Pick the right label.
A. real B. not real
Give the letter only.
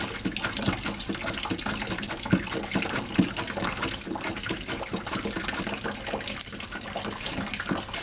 A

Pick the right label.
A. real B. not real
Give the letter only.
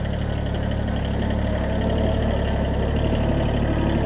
A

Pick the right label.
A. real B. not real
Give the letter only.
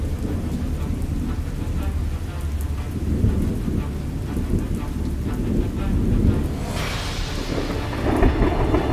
A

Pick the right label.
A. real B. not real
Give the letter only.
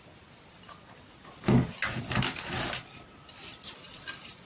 A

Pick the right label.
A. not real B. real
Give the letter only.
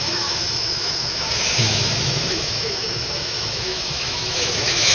A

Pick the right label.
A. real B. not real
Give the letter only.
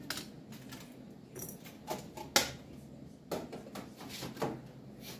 A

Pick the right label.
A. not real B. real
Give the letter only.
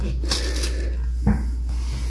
B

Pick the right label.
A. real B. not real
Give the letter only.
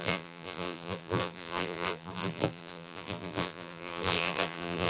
B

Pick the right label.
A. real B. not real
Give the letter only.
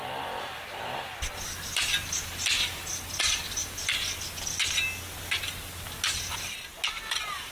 A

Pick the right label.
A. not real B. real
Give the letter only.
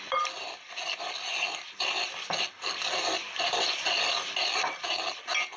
B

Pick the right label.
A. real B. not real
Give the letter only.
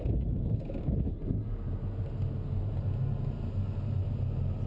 A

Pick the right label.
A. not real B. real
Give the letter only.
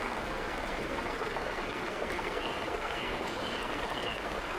A